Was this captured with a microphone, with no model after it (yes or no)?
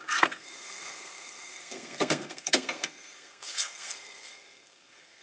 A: no